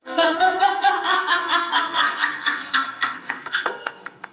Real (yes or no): no